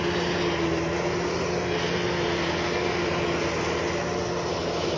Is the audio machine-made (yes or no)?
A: no